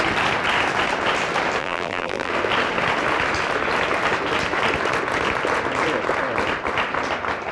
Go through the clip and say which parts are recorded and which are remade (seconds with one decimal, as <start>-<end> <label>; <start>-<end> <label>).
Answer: 0.0-1.6 recorded; 1.6-2.3 remade; 2.3-7.5 recorded